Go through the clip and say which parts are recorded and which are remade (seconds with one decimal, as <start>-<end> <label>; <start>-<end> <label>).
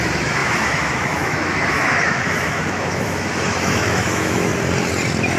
0.0-4.5 remade; 4.5-5.4 recorded